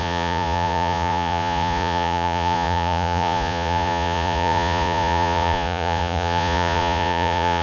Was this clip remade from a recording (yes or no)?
yes